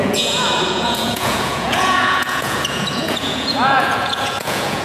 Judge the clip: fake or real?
fake